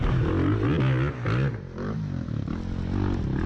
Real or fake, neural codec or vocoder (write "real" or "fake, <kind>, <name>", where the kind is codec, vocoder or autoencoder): real